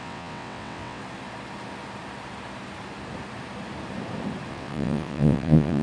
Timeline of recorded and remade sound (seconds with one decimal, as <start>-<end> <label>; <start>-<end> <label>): 0.0-1.0 remade; 1.0-4.5 recorded; 4.5-5.8 remade